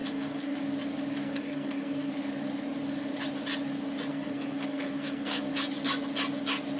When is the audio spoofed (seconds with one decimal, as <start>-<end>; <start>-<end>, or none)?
0.0-0.6; 1.2-2.1; 4.1-5.5